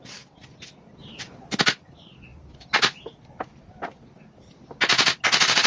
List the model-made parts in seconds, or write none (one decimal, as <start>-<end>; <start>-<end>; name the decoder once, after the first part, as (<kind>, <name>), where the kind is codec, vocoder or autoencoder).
none